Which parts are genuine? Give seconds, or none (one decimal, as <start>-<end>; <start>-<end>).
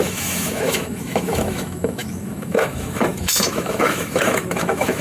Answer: none